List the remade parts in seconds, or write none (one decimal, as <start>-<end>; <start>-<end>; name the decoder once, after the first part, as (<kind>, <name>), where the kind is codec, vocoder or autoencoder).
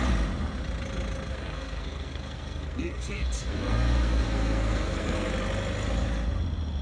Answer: 1.3-5.3 (codec, SNAC)